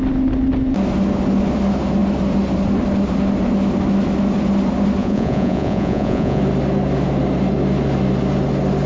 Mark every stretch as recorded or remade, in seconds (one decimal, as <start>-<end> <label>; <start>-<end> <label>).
0.0-5.0 recorded; 5.0-6.4 remade; 6.4-8.9 recorded

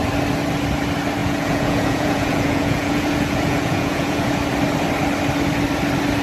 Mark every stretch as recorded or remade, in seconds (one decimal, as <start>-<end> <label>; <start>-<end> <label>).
0.0-1.2 recorded; 1.2-4.3 remade; 4.3-6.2 recorded

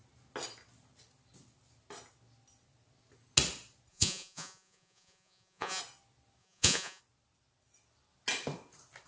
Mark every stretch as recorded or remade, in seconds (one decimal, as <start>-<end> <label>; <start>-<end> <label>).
0.0-3.9 recorded; 3.9-5.8 remade; 5.8-6.4 recorded; 6.4-7.0 remade; 7.0-9.1 recorded

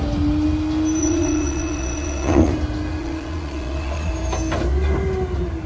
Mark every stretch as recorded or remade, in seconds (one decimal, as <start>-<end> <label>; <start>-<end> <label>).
0.0-1.0 recorded; 1.0-2.5 remade; 2.5-3.0 recorded; 3.0-4.1 remade; 4.1-5.7 recorded

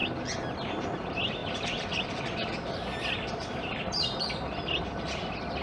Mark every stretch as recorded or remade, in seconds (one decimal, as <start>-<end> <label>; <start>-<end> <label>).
0.0-5.6 recorded

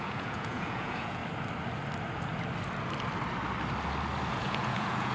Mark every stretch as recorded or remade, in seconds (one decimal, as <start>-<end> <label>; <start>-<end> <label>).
0.0-1.2 remade; 1.2-4.3 recorded; 4.3-5.1 remade